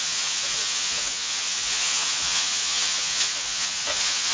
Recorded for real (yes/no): no